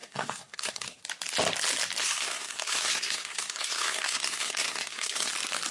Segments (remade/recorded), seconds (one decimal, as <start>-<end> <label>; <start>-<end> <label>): 0.0-1.0 remade; 1.0-2.0 recorded; 2.0-5.3 remade; 5.3-5.7 recorded